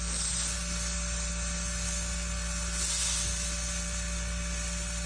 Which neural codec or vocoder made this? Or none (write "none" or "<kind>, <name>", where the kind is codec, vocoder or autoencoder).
none